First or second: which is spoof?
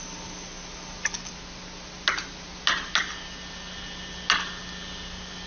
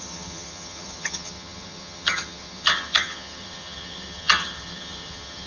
second